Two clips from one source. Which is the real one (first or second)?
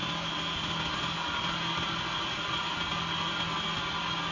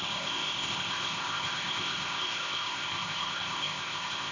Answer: first